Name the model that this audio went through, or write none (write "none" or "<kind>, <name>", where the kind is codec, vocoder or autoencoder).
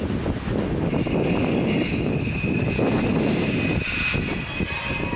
none